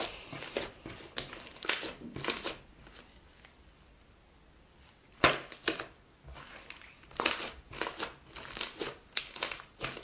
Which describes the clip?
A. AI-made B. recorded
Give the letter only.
B